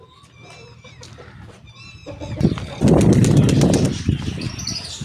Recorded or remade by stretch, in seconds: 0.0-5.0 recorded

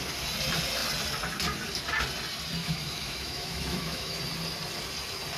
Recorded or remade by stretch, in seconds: 0.0-2.6 recorded; 2.6-4.2 remade; 4.2-5.4 recorded

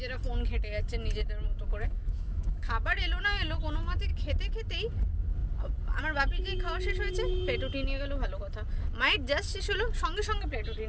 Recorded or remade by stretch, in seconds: 0.0-1.7 recorded; 1.7-2.7 remade; 2.7-10.9 recorded

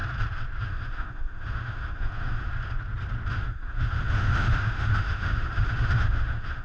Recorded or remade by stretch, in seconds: 0.0-0.6 recorded; 0.6-2.5 remade; 2.5-3.3 recorded; 3.3-6.6 remade

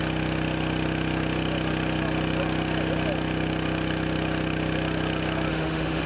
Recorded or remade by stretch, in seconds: 0.0-5.5 recorded; 5.5-6.1 remade

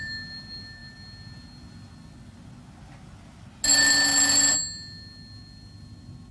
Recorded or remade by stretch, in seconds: 0.0-6.3 recorded